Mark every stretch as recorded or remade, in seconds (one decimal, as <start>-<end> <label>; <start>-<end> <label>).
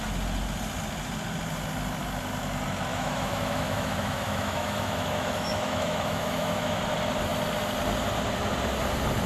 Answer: 0.0-2.9 recorded; 2.9-6.8 remade; 6.8-9.3 recorded